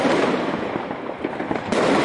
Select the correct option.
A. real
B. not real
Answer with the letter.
A